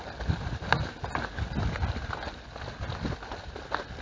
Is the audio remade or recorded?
recorded